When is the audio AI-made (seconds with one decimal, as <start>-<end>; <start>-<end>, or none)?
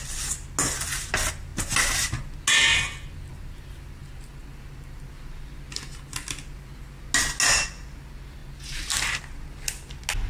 none